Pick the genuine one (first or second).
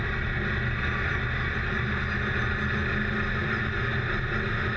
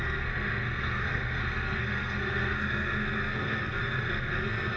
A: first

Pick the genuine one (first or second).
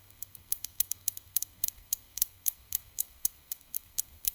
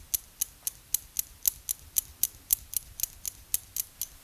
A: second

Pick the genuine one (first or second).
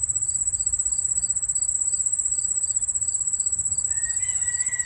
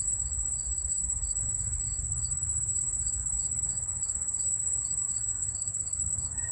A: first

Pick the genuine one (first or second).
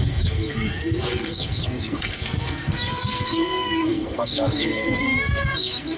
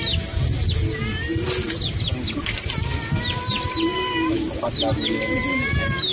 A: second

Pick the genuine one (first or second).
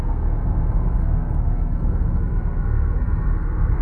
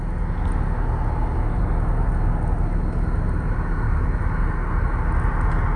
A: second